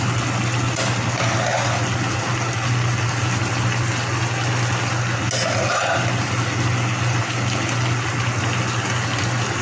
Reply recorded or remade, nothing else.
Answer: recorded